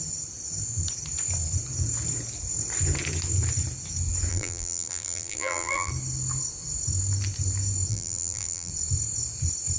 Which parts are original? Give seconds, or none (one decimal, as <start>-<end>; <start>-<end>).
0.0-4.3; 5.9-7.9; 8.7-9.8